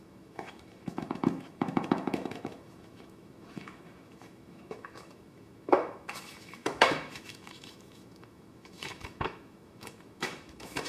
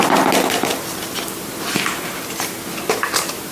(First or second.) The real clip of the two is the second